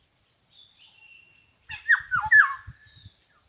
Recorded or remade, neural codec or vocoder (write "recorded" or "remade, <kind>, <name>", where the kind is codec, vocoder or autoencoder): recorded